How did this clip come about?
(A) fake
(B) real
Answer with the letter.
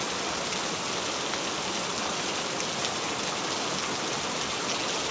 B